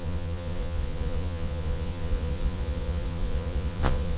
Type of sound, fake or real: fake